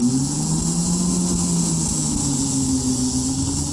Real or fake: real